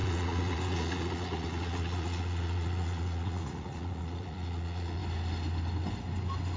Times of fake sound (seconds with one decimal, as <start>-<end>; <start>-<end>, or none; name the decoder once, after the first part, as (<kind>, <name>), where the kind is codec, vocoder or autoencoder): 0.0-5.0 (vocoder, Vocos)